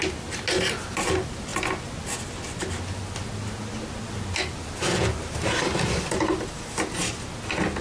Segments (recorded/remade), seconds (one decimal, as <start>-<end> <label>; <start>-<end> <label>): 0.0-7.8 recorded